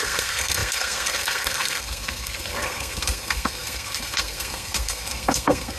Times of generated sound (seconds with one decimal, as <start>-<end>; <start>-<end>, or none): 0.0-5.8